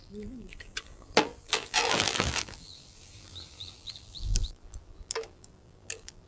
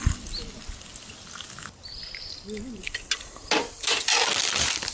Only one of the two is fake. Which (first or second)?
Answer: first